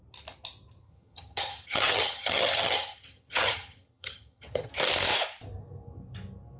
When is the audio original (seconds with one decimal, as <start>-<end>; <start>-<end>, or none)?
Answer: 0.0-0.8; 4.7-6.6